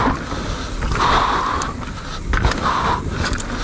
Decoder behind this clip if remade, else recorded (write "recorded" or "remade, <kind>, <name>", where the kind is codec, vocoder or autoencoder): recorded